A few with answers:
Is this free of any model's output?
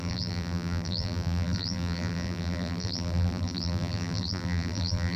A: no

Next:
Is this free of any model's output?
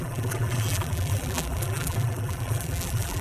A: no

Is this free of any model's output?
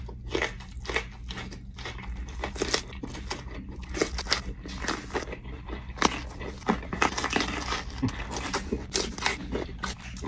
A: yes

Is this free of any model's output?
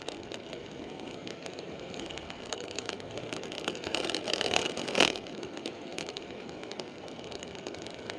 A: no